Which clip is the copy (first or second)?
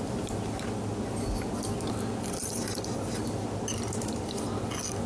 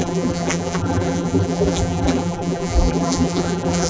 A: second